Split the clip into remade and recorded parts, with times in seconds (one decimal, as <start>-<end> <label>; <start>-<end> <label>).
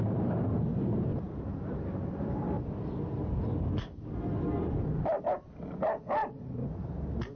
0.0-1.1 recorded; 1.1-2.2 remade; 2.2-4.6 recorded; 4.6-5.2 remade; 5.2-6.2 recorded; 6.2-6.7 remade; 6.7-7.4 recorded